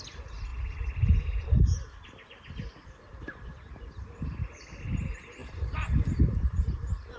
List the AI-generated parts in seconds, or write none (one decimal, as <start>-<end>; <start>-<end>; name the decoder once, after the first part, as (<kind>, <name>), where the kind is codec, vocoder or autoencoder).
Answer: 0.0-7.2 (vocoder, BigVGAN v2)